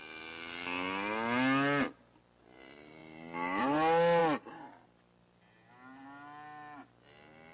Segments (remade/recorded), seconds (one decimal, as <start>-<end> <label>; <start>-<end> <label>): 0.0-7.5 recorded